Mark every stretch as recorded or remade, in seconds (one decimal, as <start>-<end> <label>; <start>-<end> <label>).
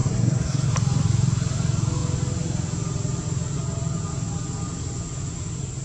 0.0-0.7 remade; 0.7-5.8 recorded